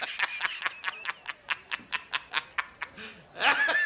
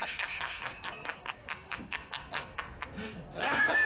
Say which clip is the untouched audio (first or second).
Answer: first